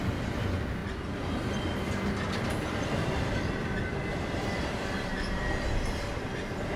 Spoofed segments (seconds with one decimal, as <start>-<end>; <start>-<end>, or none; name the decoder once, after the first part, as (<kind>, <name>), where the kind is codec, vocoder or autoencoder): none